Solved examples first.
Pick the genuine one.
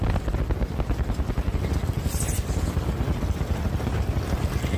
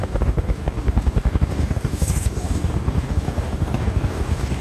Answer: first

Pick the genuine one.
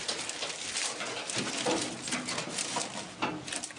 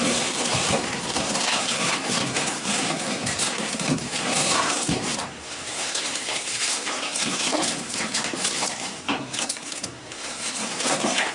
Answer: first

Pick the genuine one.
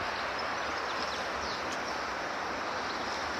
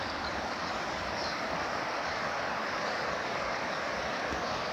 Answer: first